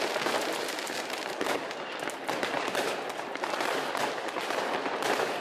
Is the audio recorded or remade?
recorded